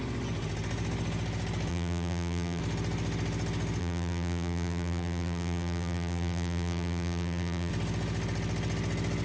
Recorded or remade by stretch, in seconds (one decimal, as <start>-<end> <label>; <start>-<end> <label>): 0.0-1.7 recorded; 1.7-2.6 remade; 2.6-3.8 recorded; 3.8-7.7 remade; 7.7-9.2 recorded